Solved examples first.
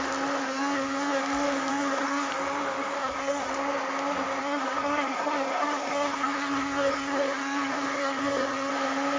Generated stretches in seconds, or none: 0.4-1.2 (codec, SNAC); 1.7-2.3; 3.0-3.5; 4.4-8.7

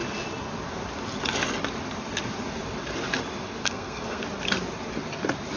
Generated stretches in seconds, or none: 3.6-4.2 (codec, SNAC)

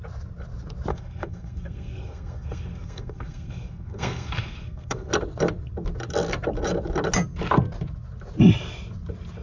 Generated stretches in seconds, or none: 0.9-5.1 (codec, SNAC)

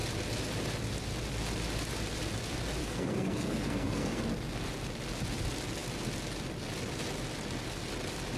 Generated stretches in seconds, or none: 2.8-4.2 (codec, SNAC)

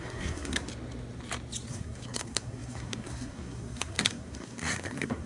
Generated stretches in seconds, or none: 0.0-0.7 (codec, SNAC); 1.7-5.3

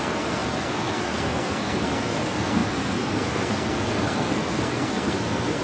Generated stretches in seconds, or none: 0.0-5.6 (codec, SNAC)